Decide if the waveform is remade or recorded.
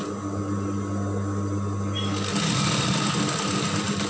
recorded